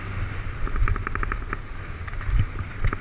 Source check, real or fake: real